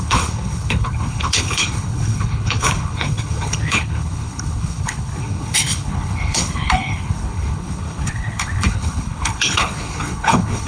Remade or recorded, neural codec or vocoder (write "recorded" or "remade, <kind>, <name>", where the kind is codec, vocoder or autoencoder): remade, codec, HILCodec